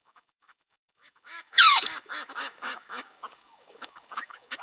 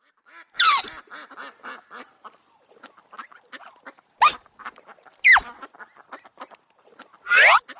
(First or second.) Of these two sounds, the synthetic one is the first